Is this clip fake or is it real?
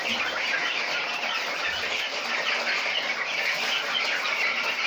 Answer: real